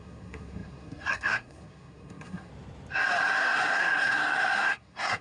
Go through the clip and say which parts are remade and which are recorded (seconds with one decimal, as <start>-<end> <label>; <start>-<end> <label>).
0.0-2.5 remade; 2.5-3.4 recorded; 3.4-5.2 remade

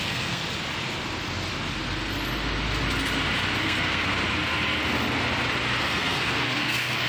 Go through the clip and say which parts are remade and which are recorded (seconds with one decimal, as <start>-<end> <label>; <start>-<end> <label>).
0.0-0.4 remade; 0.4-3.6 recorded; 3.6-4.1 remade; 4.1-5.8 recorded; 5.8-7.1 remade

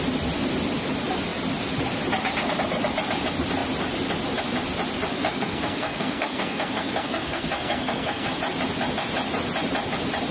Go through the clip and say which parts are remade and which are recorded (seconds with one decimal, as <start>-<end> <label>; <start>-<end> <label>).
0.0-5.1 recorded; 5.1-8.3 remade; 8.3-10.3 recorded

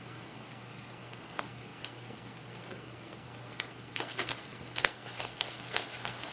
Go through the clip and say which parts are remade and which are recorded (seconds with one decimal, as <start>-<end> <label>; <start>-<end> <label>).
0.0-6.3 remade

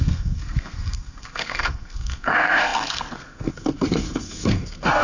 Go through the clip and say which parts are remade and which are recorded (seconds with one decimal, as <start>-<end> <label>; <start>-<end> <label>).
0.0-5.0 remade

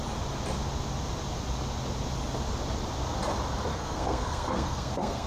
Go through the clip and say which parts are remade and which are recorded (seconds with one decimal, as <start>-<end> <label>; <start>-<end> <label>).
0.0-3.7 recorded; 3.7-5.3 remade